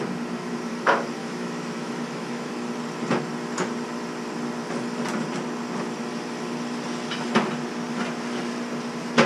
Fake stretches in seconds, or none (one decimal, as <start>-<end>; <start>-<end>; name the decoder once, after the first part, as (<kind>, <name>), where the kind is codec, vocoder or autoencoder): 1.2-2.5 (autoencoder, DAC-VAE)